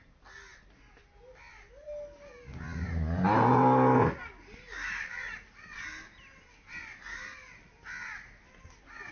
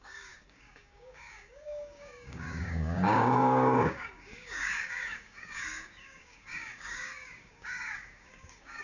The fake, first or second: second